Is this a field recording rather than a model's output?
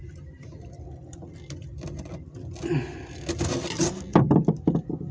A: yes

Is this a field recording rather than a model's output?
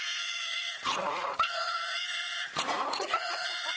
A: no